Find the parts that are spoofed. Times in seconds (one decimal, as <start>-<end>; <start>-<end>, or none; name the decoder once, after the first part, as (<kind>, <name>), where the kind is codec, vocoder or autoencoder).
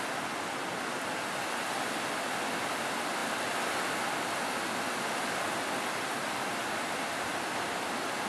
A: none